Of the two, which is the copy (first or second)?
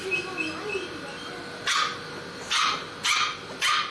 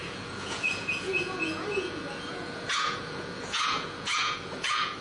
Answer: second